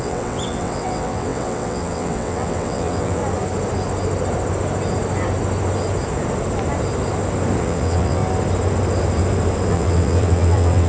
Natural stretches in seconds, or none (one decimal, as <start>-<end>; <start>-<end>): 3.2-7.6; 8.2-9.7